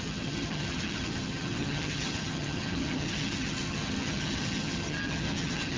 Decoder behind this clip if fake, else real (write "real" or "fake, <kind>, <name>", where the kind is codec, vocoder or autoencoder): fake, vocoder, HiFi-GAN